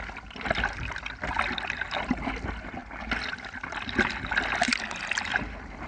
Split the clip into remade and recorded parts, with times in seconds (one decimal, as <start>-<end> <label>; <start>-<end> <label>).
0.0-5.9 recorded